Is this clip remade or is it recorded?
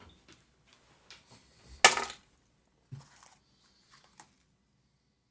recorded